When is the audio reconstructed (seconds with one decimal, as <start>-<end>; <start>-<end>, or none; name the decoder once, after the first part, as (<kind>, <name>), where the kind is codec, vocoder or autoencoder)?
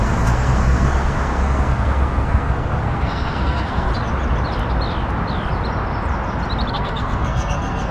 0.0-3.9 (codec, SNAC); 6.7-7.9